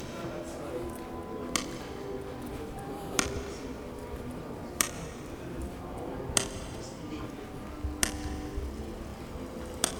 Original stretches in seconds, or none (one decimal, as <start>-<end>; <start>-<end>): 0.0-2.5; 7.0-9.1